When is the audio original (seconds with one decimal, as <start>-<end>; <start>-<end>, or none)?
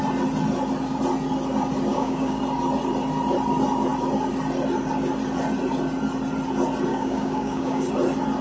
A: 0.0-1.9; 2.4-6.9; 7.9-8.4